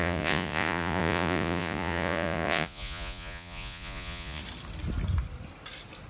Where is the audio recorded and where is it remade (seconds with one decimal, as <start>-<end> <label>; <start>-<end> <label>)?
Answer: 0.0-4.4 remade; 4.4-6.1 recorded